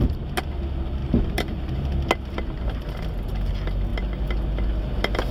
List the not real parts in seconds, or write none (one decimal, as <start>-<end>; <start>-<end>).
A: 1.0-1.7